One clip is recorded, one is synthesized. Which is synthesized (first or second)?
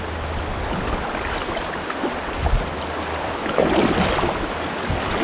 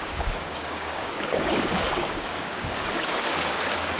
second